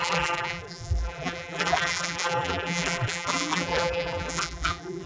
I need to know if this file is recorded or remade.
remade